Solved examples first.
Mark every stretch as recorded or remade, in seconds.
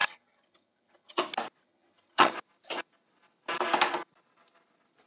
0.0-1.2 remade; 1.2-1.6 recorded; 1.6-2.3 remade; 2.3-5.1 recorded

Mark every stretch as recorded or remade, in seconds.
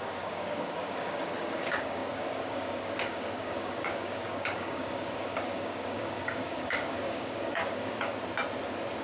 0.0-8.1 remade; 8.1-9.0 recorded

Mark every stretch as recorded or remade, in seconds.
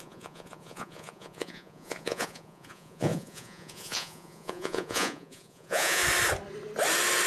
0.0-6.0 remade; 6.0-7.3 recorded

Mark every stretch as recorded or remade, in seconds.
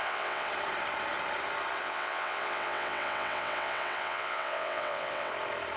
0.0-0.5 remade; 0.5-1.8 recorded; 1.8-5.3 remade; 5.3-5.8 recorded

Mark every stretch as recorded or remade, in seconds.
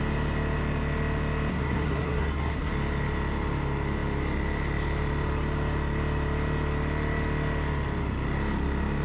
0.0-1.5 recorded; 1.5-2.7 remade; 2.7-9.0 recorded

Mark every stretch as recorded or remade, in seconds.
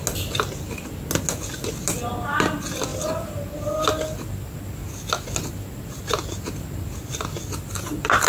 0.0-8.3 recorded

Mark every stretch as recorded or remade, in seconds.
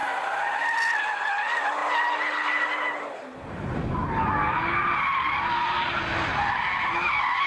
0.0-7.5 recorded